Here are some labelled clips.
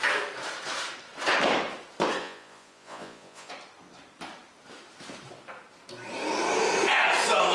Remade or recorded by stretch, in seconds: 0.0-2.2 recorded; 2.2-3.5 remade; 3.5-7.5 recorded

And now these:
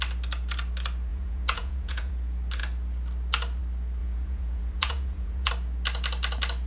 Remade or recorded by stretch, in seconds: 0.0-1.1 recorded; 1.1-2.1 remade; 2.1-4.0 recorded; 4.0-5.5 remade; 5.5-6.7 recorded

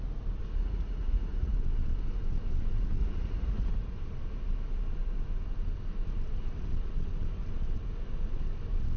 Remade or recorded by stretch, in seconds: 0.0-0.4 recorded; 0.4-1.5 remade; 1.5-3.0 recorded; 3.0-3.7 remade; 3.7-9.0 recorded

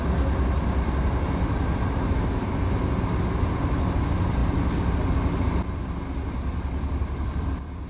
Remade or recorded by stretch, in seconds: 0.0-7.9 recorded

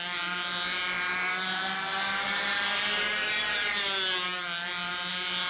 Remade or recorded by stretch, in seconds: 0.0-5.5 recorded